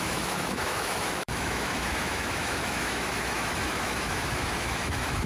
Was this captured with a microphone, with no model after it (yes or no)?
no